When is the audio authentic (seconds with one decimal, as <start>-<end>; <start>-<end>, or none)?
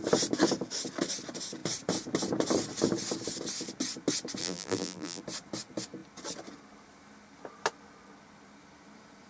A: 0.0-4.4; 5.2-9.3